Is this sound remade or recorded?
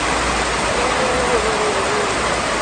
recorded